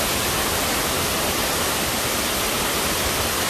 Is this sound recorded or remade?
recorded